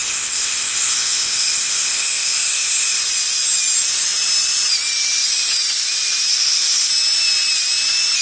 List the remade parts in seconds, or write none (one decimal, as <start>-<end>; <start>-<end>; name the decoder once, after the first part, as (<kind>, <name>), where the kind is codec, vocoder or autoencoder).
0.0-3.0 (codec, ZipCodec); 6.3-6.9